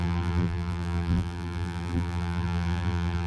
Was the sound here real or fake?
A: fake